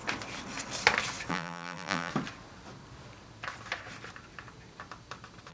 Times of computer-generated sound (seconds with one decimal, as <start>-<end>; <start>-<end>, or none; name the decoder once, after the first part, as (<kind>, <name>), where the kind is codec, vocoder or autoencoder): 1.3-2.1 (vocoder, BigVGAN v2)